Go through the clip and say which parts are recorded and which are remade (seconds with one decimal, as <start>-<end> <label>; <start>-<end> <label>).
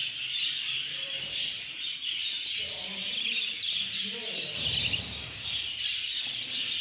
0.0-6.8 remade